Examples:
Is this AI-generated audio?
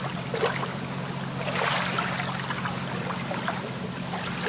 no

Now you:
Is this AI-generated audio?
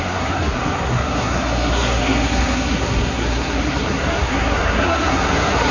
yes